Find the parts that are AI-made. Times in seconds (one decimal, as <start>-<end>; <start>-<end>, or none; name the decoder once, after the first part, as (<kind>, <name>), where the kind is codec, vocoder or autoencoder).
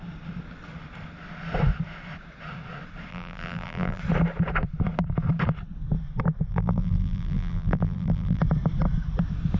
3.1-4.0 (vocoder, BigVGAN v2); 6.5-8.4